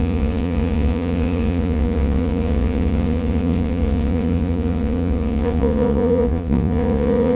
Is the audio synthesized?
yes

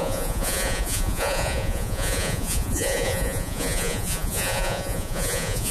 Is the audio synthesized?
yes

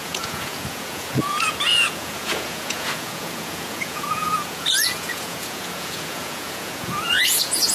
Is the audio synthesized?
yes